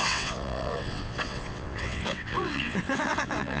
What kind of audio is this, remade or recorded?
remade